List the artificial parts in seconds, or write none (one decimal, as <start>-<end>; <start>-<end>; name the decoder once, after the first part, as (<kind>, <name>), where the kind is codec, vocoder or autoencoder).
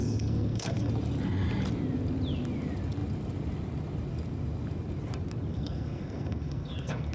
0.0-0.9 (codec, SNAC); 5.5-7.1